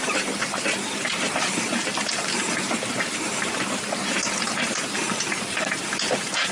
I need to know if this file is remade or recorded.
remade